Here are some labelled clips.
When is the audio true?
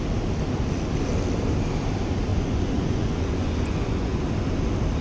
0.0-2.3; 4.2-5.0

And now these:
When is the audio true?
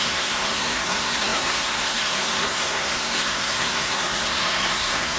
none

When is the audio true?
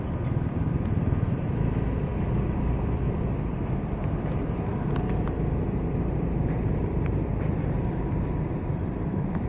4.7-6.8; 7.3-8.9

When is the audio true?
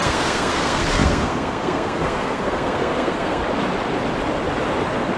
3.4-5.2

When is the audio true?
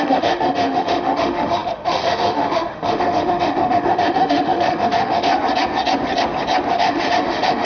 5.3-6.7